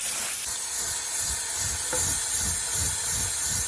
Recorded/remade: recorded